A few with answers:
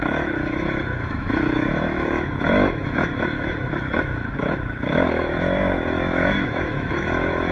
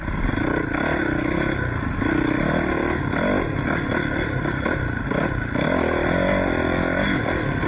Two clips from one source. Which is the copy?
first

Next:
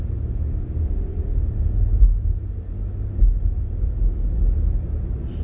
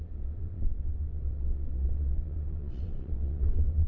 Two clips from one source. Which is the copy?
second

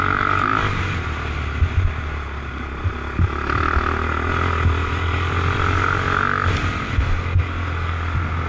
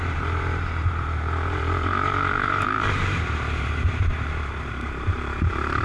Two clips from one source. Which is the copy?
second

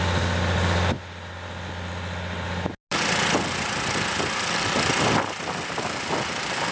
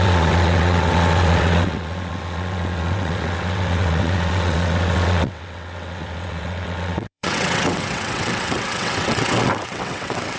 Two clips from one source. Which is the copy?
second